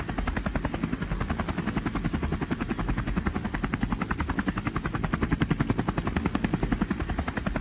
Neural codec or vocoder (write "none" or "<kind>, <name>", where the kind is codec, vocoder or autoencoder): none